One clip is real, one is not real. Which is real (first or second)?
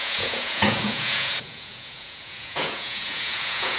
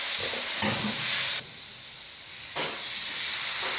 second